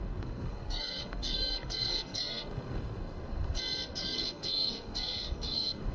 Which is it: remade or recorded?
remade